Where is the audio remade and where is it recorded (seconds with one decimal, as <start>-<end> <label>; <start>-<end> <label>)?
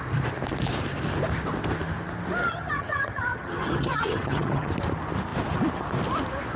0.0-2.4 recorded; 2.4-4.7 remade; 4.7-6.6 recorded